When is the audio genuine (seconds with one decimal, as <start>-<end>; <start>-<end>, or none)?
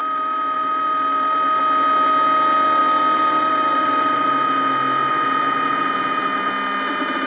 1.6-2.8; 4.3-7.3